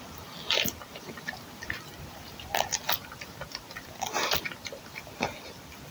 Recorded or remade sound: recorded